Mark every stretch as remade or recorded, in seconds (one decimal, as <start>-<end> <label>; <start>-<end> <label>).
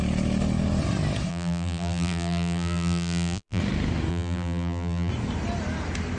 0.0-1.3 recorded; 1.3-3.6 remade; 3.6-4.1 recorded; 4.1-5.1 remade; 5.1-6.2 recorded